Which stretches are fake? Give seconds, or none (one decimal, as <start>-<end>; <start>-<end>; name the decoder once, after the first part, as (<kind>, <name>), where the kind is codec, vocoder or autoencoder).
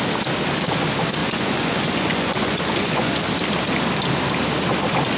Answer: 1.2-3.1 (vocoder, Vocos)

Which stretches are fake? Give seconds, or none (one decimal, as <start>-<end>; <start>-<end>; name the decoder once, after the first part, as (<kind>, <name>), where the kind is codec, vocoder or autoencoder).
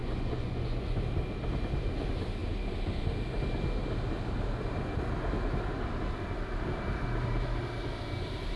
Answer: 0.0-1.0 (vocoder, Vocos)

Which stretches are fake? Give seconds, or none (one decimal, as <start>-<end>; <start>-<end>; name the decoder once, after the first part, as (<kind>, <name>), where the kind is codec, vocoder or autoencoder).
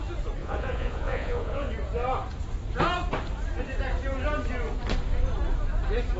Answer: 0.4-1.7 (vocoder, Vocos)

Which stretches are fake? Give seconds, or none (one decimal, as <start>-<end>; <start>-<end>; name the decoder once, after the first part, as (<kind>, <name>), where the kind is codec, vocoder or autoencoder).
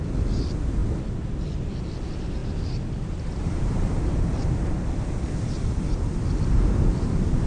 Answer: none